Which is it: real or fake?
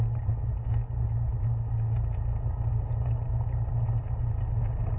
real